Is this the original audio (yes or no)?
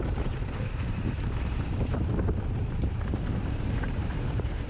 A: no